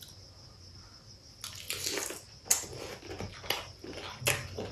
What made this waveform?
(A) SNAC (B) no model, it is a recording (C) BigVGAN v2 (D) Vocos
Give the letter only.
B